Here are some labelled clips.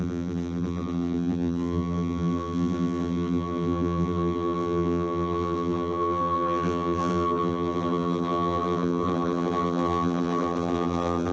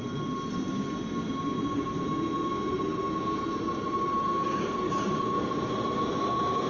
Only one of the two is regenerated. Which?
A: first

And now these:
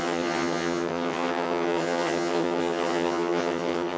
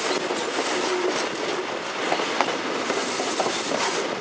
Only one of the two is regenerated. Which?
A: first